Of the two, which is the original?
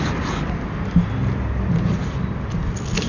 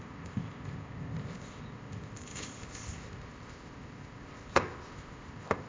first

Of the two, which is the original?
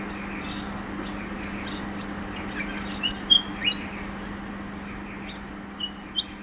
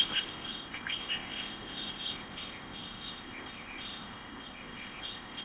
first